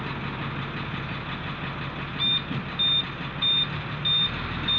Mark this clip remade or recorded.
recorded